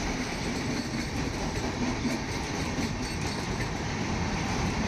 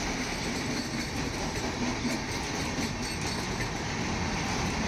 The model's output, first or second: first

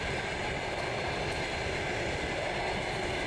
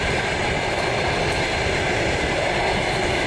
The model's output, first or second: second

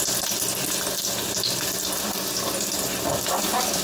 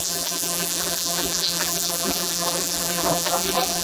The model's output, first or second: second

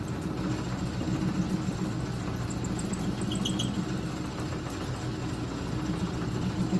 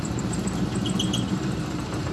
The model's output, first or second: second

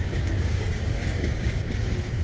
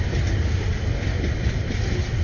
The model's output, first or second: first